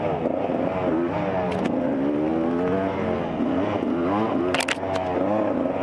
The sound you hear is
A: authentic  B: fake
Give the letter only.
A